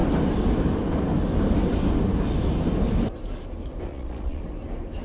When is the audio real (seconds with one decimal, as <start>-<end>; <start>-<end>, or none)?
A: 0.0-3.9; 4.4-5.0